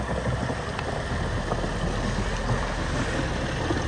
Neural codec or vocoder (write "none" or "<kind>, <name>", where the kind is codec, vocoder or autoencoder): none